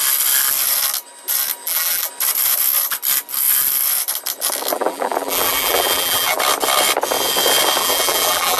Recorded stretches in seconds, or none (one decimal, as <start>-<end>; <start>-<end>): 0.0-1.6; 2.1-4.7; 6.4-7.8